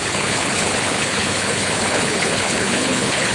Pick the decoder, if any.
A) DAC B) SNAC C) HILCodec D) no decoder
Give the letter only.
C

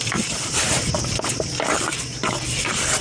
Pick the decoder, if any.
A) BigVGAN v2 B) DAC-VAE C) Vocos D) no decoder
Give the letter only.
A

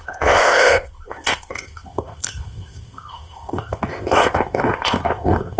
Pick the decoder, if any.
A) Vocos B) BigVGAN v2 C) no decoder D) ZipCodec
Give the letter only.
D